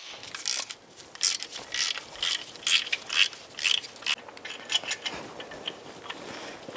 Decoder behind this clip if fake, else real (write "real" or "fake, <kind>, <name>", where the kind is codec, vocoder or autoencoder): real